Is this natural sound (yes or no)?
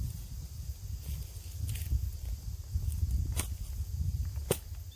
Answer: yes